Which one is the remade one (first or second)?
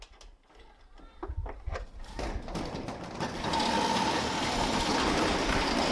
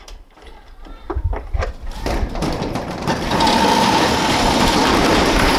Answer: second